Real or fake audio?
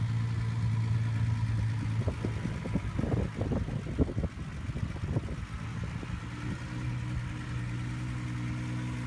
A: real